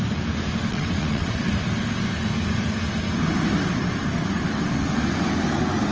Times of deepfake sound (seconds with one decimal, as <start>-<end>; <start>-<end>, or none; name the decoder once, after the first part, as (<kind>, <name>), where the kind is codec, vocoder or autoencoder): 0.7-1.5 (vocoder, WaveNeXt)